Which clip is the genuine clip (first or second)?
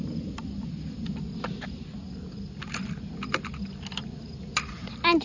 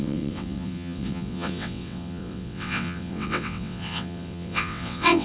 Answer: first